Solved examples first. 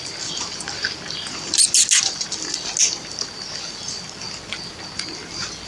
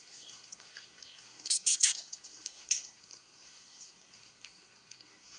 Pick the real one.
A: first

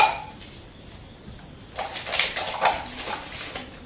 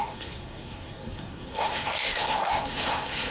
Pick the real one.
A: first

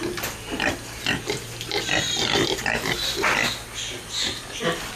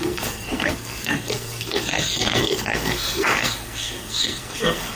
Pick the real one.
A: first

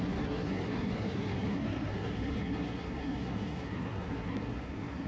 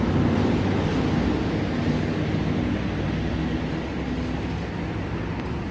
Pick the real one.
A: second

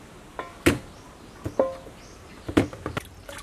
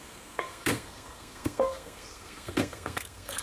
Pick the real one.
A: first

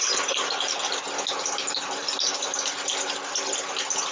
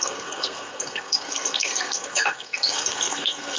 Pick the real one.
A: first